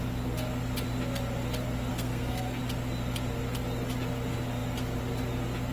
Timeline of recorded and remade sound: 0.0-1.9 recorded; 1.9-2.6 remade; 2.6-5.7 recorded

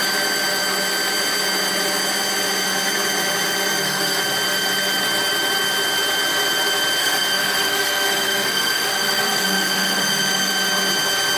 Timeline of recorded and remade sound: 0.0-3.7 recorded; 3.7-4.2 remade; 4.2-7.0 recorded; 7.0-10.5 remade; 10.5-11.4 recorded

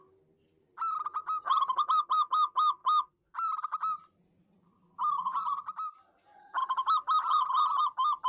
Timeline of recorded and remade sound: 0.0-8.3 recorded

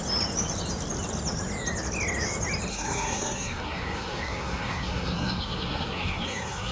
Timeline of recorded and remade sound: 0.0-2.7 recorded; 2.7-6.7 remade

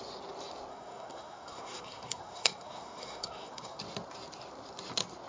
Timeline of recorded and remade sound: 0.0-0.7 recorded; 0.7-3.8 remade; 3.8-5.3 recorded

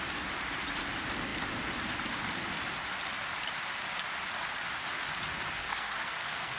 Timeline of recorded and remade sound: 0.0-5.6 recorded; 5.6-6.6 remade

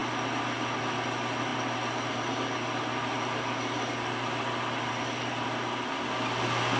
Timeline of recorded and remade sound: 0.0-6.8 recorded

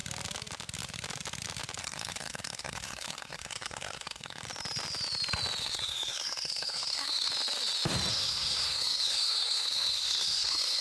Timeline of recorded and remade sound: 0.0-1.8 recorded; 1.8-4.4 remade; 4.4-5.6 recorded; 5.6-7.3 remade; 7.3-8.1 recorded; 8.1-10.8 remade